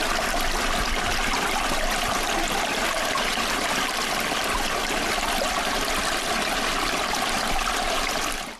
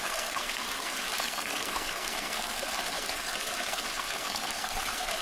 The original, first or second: first